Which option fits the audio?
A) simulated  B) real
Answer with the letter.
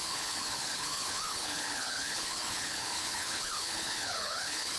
A